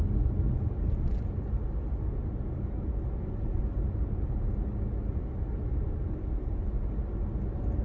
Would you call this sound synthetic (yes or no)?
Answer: no